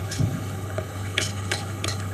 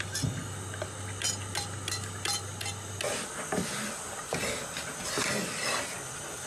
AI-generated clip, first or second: first